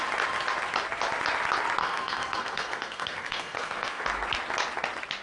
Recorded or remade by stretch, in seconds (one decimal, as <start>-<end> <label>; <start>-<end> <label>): 0.0-1.8 recorded; 1.8-4.0 remade; 4.0-5.2 recorded